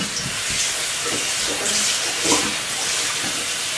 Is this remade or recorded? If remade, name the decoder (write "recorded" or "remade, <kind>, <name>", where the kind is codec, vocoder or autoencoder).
recorded